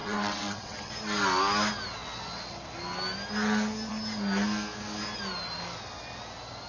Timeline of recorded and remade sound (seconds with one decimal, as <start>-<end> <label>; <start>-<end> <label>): 0.0-0.9 remade; 0.9-6.7 recorded